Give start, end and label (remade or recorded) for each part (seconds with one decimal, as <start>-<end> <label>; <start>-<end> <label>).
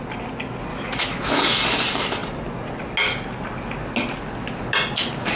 0.0-0.7 recorded; 0.7-1.4 remade; 1.4-5.4 recorded